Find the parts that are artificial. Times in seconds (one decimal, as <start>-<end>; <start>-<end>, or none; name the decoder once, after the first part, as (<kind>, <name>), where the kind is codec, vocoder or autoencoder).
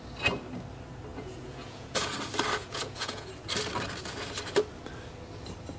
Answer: 1.1-2.1 (vocoder, Vocos); 2.6-3.3